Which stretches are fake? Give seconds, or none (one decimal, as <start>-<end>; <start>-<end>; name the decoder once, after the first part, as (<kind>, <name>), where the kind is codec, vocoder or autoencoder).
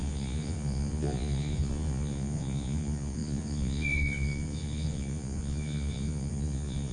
0.0-6.9 (vocoder, Vocos)